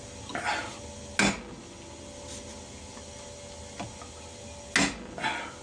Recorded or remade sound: recorded